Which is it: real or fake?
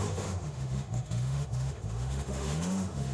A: fake